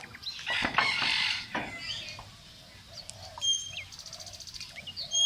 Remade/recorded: recorded